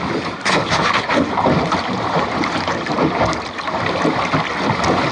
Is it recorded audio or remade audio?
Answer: recorded